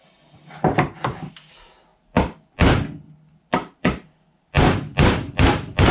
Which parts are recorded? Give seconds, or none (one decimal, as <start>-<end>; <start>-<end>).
0.0-5.9